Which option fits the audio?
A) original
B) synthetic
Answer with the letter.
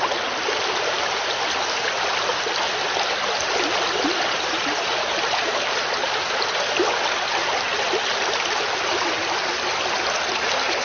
A